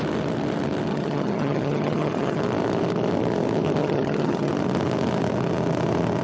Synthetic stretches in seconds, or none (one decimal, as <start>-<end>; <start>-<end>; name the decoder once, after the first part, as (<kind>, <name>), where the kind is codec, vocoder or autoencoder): 0.9-2.4 (vocoder, HiFi-GAN); 3.8-4.5